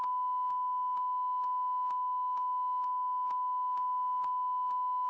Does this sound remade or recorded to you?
remade